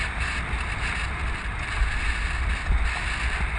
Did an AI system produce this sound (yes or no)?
no